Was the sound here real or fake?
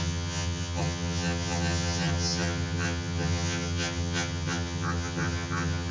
fake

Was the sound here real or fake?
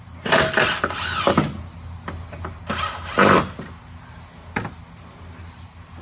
real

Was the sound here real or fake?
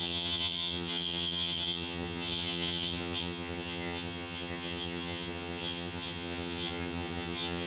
fake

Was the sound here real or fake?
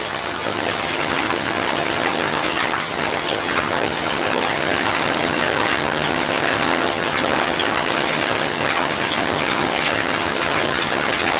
fake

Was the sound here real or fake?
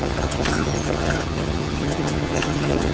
fake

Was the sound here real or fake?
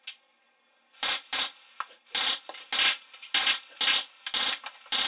real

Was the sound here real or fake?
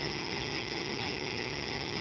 fake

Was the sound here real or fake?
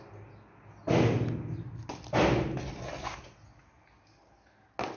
real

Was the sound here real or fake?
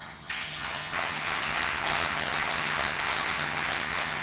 fake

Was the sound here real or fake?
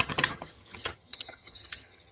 fake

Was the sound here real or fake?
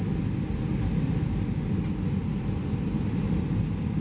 real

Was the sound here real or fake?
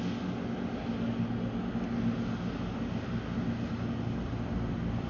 real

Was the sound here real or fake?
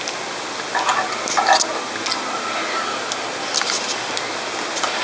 real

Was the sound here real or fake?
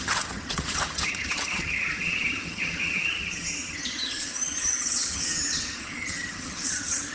fake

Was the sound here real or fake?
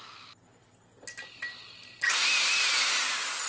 real